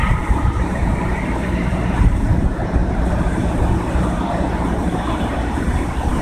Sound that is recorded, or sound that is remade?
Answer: remade